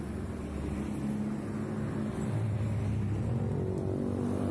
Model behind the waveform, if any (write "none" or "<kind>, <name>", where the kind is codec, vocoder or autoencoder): none